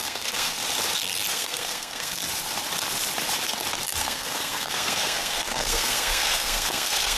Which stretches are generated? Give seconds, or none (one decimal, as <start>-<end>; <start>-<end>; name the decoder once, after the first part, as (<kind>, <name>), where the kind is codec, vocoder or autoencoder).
0.0-0.6 (codec, SNAC); 1.3-2.2; 4.0-7.2